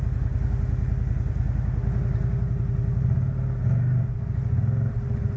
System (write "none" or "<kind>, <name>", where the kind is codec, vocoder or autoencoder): none